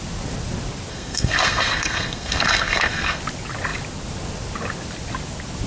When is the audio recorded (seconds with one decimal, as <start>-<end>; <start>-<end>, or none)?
0.0-0.9; 3.2-5.7